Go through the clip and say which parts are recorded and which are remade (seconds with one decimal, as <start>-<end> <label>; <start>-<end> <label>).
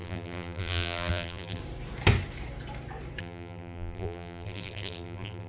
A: 0.0-1.6 remade; 1.6-3.2 recorded; 3.2-5.5 remade